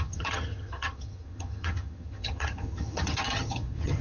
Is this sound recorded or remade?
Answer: remade